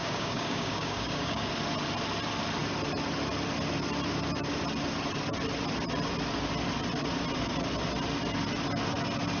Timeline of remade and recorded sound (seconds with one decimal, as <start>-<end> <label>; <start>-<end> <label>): 0.0-1.5 remade; 1.5-9.4 recorded